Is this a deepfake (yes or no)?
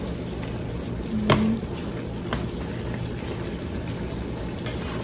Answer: no